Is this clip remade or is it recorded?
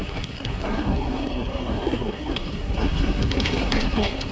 remade